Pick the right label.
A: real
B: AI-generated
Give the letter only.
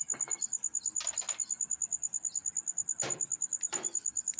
A